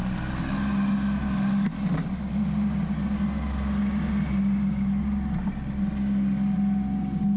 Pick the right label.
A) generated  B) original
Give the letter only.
B